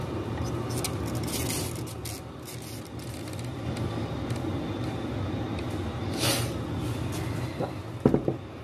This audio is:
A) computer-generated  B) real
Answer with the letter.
B